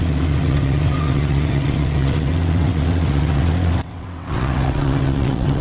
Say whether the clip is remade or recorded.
remade